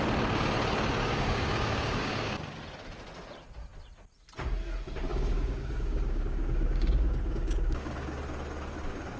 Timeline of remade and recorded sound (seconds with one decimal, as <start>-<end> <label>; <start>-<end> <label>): 0.0-1.0 recorded; 1.0-2.6 remade; 2.6-5.1 recorded; 5.1-8.1 remade; 8.1-9.2 recorded